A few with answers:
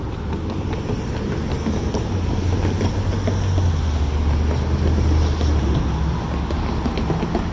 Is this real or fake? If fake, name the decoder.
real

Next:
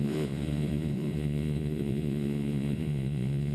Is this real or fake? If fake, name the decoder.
fake, vocoder, Vocos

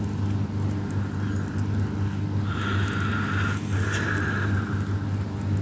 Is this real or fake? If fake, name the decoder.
real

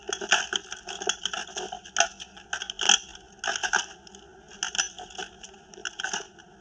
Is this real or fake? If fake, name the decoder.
real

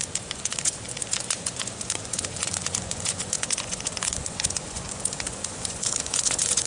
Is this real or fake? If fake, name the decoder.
fake, vocoder, Vocos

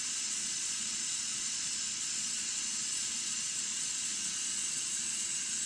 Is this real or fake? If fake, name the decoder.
fake, vocoder, Vocos